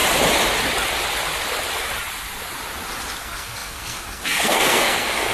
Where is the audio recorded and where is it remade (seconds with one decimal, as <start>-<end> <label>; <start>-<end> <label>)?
0.0-3.2 recorded; 3.2-5.3 remade

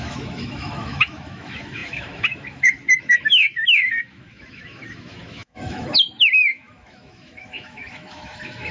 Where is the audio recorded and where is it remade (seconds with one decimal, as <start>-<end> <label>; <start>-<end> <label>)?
0.0-8.7 remade

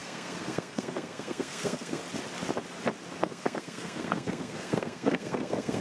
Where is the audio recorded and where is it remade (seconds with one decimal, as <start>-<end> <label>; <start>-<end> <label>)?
0.0-2.0 remade; 2.0-3.2 recorded; 3.2-5.8 remade

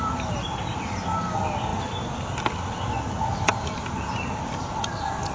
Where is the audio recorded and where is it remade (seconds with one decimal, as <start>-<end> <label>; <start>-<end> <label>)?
0.0-5.3 recorded

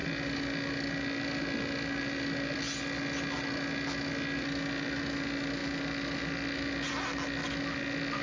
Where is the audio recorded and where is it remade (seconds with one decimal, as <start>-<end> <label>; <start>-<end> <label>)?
0.0-8.2 recorded

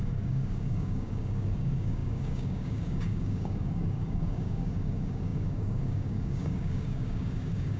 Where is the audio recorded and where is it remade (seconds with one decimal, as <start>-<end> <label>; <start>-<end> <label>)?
0.0-7.8 remade

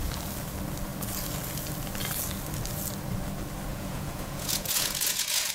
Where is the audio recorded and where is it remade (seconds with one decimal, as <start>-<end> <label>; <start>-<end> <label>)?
0.0-3.7 recorded; 3.7-5.5 remade